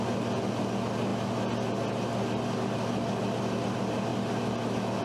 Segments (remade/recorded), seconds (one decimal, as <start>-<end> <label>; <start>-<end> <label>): 0.0-5.0 recorded